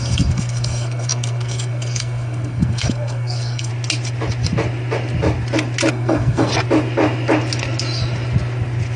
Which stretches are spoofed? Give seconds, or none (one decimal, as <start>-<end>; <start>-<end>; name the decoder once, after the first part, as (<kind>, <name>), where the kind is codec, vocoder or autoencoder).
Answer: 0.0-3.7 (codec, SNAC); 5.9-6.5